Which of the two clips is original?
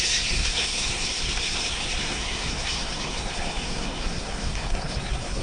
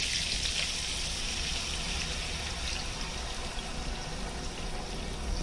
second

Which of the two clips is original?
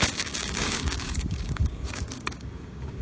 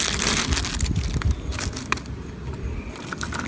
second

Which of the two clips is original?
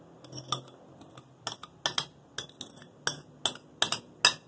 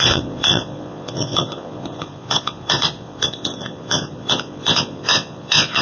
first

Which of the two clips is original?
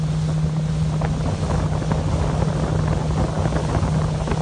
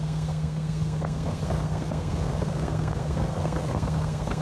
first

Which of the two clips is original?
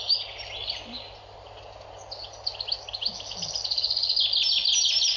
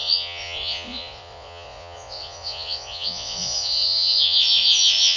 first